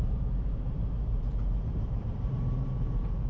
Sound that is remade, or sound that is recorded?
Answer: remade